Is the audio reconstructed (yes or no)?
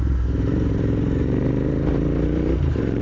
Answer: yes